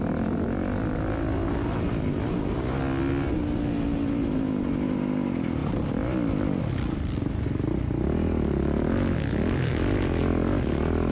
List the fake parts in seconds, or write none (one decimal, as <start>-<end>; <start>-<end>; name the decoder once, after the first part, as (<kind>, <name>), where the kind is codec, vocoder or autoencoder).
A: 5.6-6.6 (vocoder, BigVGAN v2)